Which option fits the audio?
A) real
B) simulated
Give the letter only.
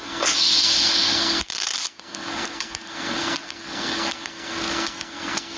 B